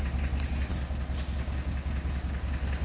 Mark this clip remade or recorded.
recorded